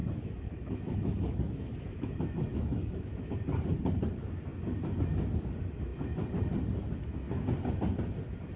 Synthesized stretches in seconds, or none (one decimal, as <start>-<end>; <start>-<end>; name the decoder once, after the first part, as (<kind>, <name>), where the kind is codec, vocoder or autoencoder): 0.0-3.3 (autoencoder, DAC-VAE)